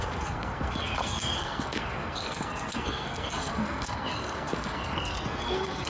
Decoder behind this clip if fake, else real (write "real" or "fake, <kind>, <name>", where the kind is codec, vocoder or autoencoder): fake, codec, SNAC